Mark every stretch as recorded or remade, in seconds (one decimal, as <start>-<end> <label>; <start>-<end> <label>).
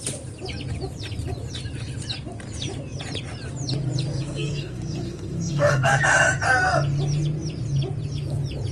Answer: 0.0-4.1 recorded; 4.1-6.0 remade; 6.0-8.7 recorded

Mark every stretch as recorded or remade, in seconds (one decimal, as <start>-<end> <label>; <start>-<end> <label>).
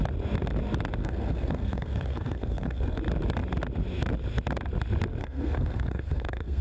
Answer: 0.0-1.0 recorded; 1.0-3.0 remade; 3.0-5.2 recorded; 5.2-6.6 remade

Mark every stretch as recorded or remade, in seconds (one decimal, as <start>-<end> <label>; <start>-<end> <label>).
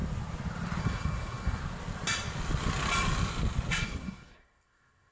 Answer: 0.0-0.8 recorded; 0.8-1.6 remade; 1.6-3.7 recorded; 3.7-5.1 remade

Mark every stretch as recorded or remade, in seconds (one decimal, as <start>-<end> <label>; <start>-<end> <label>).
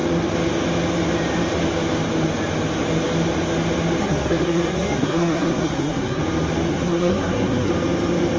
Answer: 0.0-4.0 recorded; 4.0-6.2 remade; 6.2-6.7 recorded; 6.7-7.7 remade; 7.7-8.4 recorded